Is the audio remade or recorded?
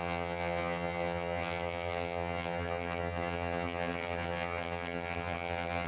remade